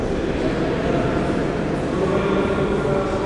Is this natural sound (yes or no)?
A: yes